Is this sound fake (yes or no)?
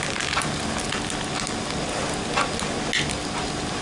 no